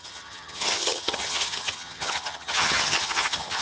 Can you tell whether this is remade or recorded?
remade